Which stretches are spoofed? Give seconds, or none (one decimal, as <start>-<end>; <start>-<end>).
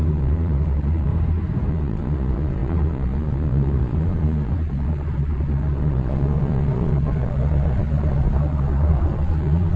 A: 0.0-1.1; 1.7-9.8